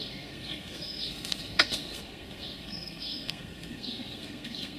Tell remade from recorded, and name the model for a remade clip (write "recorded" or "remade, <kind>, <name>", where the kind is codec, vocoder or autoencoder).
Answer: remade, codec, SNAC